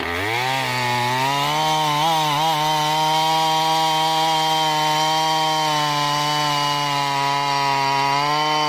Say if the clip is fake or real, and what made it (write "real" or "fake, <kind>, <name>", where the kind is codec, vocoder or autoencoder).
real